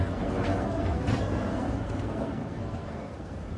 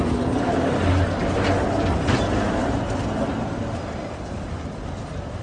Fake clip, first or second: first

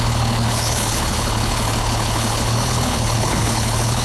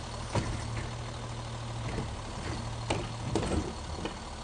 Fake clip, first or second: first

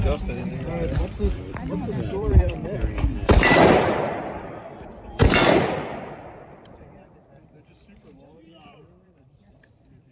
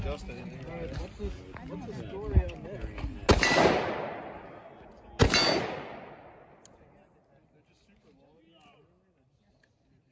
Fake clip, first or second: first